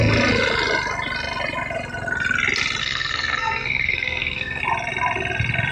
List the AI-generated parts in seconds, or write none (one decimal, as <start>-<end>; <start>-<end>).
2.8-4.6